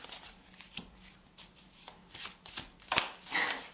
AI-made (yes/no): no